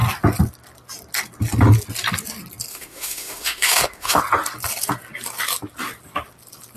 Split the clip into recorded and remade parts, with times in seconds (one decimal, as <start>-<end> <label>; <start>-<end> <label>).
0.0-2.7 recorded; 2.7-4.2 remade; 4.2-6.8 recorded